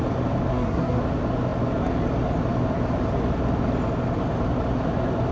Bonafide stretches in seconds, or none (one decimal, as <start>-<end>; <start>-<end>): 0.0-0.5; 1.0-5.3